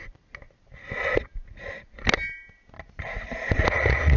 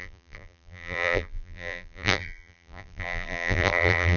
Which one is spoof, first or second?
second